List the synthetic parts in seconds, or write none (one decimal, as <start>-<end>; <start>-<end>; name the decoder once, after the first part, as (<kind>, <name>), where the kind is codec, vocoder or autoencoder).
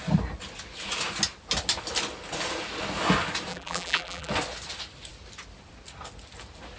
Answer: 3.5-4.3 (vocoder, BigVGAN v2)